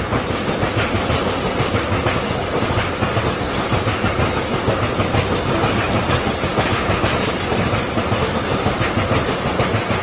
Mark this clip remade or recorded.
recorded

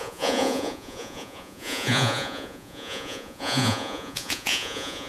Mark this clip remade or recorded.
remade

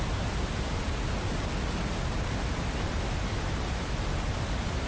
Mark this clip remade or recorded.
recorded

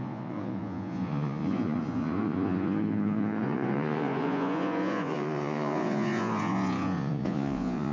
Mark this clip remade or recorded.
remade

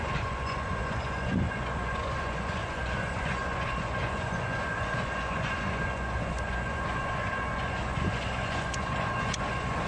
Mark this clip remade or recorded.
remade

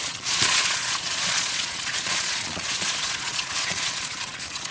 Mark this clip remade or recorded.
remade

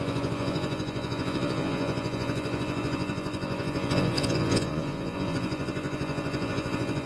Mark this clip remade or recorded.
remade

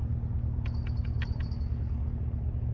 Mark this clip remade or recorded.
recorded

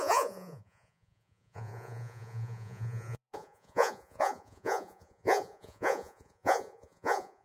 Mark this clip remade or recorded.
remade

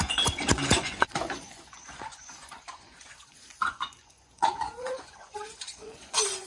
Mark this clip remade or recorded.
remade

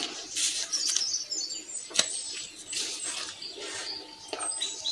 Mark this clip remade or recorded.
recorded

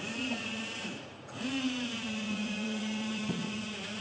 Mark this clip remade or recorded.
remade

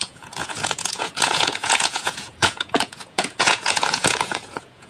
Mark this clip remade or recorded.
remade